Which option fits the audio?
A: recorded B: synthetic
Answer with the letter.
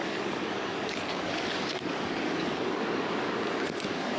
B